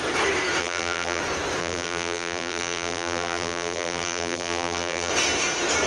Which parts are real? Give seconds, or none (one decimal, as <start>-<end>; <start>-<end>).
0.0-0.6; 1.2-1.6; 5.1-5.9